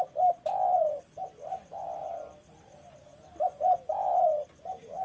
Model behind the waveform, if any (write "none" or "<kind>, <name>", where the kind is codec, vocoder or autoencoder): none